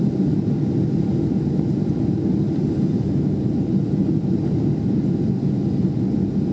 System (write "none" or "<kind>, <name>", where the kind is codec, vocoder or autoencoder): none